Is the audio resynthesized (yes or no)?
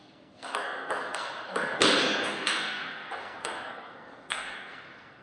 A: yes